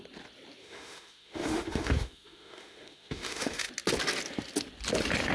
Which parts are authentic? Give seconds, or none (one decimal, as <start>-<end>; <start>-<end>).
0.0-0.6; 3.7-5.3